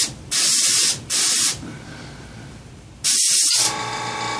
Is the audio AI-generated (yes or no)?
no